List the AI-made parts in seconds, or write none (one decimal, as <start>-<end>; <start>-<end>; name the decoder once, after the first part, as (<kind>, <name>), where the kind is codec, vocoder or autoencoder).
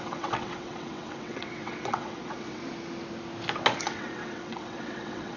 0.0-2.6 (vocoder, WaveNeXt); 3.8-5.4